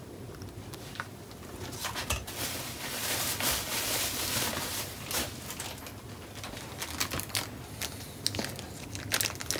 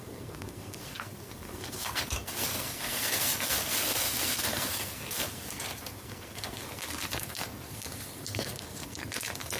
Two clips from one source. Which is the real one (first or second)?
first